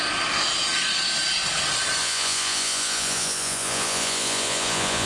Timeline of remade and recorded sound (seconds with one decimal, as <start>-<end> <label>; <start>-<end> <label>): 0.0-2.0 recorded; 2.0-5.1 remade